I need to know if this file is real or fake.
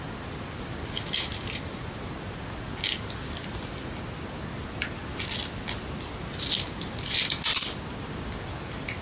real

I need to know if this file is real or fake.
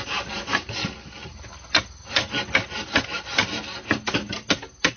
real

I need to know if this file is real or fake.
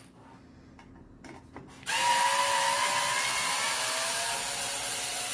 real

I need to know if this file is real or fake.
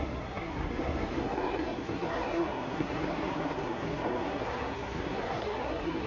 fake